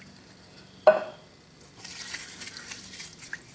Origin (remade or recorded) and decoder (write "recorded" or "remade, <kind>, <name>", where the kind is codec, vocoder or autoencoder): recorded